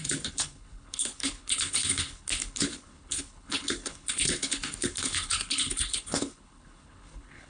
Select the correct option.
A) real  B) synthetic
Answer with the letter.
B